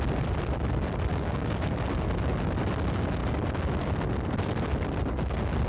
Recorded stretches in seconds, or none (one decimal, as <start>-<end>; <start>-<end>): 0.0-1.1; 1.7-5.7